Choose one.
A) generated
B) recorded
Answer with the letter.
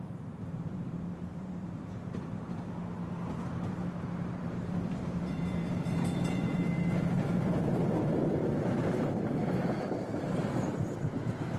A